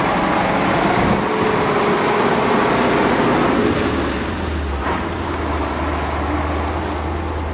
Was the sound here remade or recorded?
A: recorded